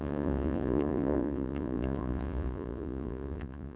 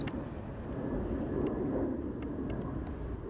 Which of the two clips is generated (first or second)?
first